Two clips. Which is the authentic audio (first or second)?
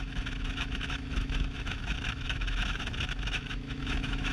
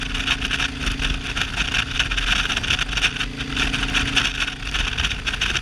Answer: second